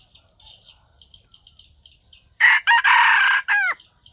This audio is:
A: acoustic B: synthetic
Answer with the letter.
B